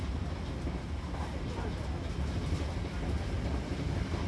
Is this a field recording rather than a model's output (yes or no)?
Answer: yes